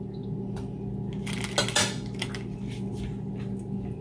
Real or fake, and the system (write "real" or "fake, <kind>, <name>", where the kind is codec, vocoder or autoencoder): real